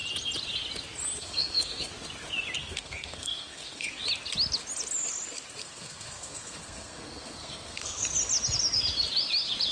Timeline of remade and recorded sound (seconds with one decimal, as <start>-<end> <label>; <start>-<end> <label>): 0.0-1.2 recorded; 1.2-1.9 remade; 1.9-2.6 recorded; 2.6-4.0 remade; 4.0-5.6 recorded; 5.6-8.0 remade; 8.0-9.7 recorded